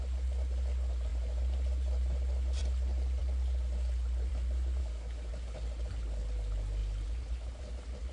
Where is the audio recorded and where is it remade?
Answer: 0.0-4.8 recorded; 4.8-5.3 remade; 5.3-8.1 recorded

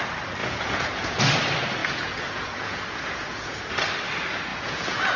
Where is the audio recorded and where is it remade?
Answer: 0.0-0.4 recorded; 0.4-1.2 remade; 1.2-1.8 recorded; 1.8-3.7 remade; 3.7-4.5 recorded; 4.5-5.2 remade

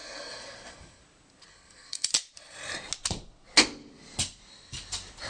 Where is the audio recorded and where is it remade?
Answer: 0.0-1.0 remade; 1.0-1.5 recorded; 1.5-2.1 remade; 2.1-5.3 recorded

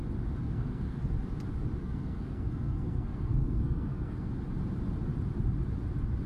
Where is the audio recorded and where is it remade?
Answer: 0.0-0.4 recorded; 0.4-1.0 remade; 1.0-1.8 recorded; 1.8-4.3 remade; 4.3-6.3 recorded

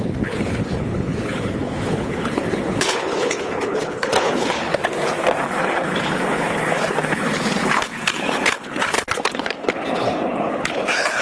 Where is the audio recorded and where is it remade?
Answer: 0.0-4.8 remade; 4.8-5.4 recorded; 5.4-11.2 remade

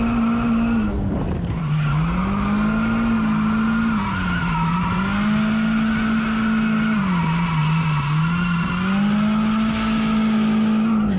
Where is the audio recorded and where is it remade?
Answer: 0.0-0.9 recorded; 0.9-1.9 remade; 1.9-4.4 recorded; 4.4-5.0 remade; 5.0-11.2 recorded

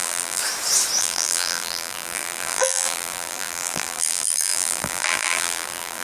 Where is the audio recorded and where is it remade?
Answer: 0.0-0.4 remade; 0.4-1.0 recorded; 1.0-6.0 remade